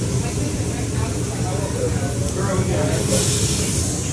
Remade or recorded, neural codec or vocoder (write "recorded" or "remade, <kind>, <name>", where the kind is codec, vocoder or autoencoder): recorded